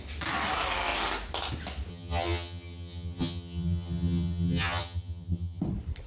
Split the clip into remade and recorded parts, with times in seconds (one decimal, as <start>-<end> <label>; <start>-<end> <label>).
0.0-1.9 recorded; 1.9-5.6 remade; 5.6-6.1 recorded